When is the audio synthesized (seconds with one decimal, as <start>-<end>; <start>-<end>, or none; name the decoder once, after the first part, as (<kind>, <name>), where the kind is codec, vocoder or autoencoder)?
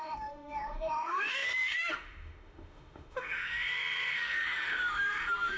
0.0-5.6 (autoencoder, DAC-VAE)